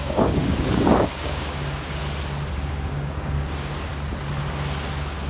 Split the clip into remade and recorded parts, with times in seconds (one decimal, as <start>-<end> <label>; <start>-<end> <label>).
0.0-2.0 remade; 2.0-2.7 recorded; 2.7-3.9 remade; 3.9-5.3 recorded